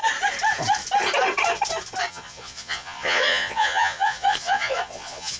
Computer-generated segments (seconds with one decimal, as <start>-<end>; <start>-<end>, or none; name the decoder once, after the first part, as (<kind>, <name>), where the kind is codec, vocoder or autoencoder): 2.1-5.4 (vocoder, Vocos)